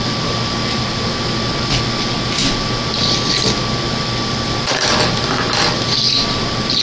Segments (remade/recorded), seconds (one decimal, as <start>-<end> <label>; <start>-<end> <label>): 0.0-6.8 recorded